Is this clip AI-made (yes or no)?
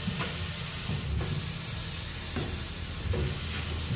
no